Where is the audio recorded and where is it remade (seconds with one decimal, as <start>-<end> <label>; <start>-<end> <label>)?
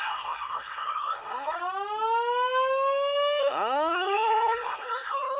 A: 0.0-1.6 remade; 1.6-3.4 recorded; 3.4-5.4 remade